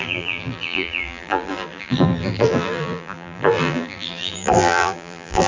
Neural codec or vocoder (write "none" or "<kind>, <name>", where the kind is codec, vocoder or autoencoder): vocoder, BigVGAN v2